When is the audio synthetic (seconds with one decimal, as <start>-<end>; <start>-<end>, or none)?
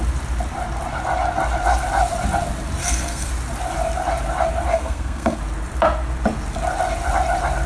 2.8-3.3; 4.7-5.4